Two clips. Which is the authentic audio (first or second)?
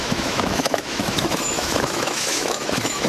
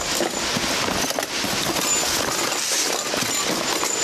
second